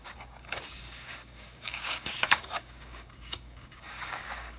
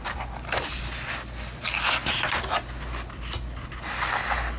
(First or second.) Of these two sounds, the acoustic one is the second